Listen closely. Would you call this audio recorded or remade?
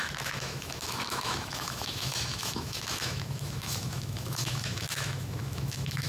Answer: remade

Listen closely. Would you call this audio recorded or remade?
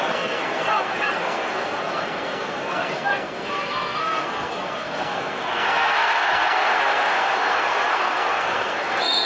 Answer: remade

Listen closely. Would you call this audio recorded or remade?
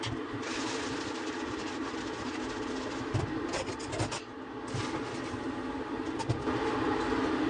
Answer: recorded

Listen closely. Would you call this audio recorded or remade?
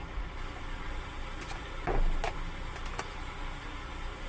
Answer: recorded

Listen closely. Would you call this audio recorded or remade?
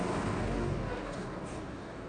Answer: remade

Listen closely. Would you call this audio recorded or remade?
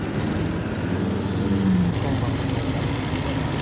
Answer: recorded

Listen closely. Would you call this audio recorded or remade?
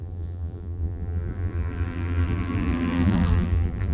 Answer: remade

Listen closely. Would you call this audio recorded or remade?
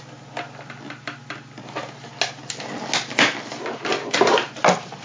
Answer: recorded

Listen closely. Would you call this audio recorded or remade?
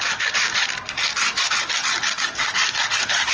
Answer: recorded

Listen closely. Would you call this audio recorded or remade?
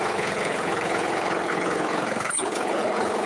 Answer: remade